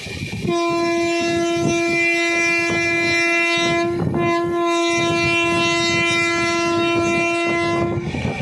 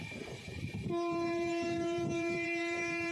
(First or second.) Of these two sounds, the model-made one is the second